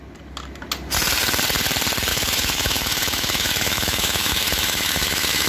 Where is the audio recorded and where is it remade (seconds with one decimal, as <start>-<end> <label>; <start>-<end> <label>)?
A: 0.0-2.1 recorded; 2.1-5.5 remade